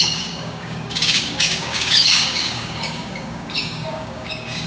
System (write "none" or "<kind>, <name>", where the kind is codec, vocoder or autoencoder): codec, DAC